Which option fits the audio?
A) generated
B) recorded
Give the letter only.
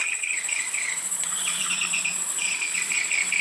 A